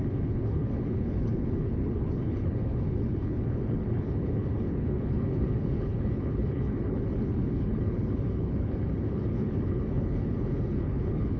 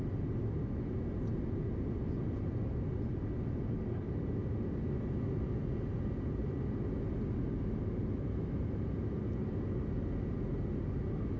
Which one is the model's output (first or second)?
first